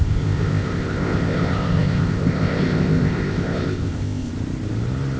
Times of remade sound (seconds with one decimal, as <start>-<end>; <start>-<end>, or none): 0.0-4.3